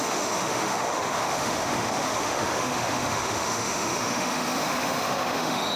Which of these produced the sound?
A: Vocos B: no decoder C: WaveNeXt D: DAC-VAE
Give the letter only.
D